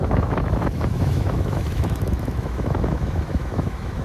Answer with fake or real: fake